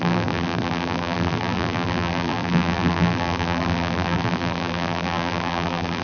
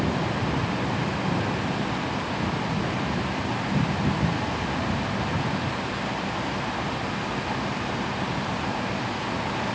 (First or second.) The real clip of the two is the second